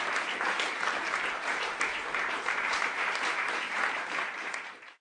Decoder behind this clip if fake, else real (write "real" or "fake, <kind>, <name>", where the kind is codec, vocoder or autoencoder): fake, vocoder, BigVGAN v2